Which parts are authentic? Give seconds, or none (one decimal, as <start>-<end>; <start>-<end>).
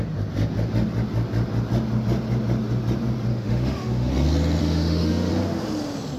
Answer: 0.0-3.3; 4.1-4.6; 5.3-6.2